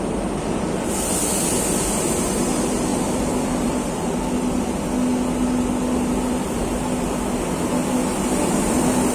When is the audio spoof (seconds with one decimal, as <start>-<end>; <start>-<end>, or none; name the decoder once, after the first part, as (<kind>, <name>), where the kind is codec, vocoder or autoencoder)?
2.9-4.1 (vocoder, BigVGAN v2)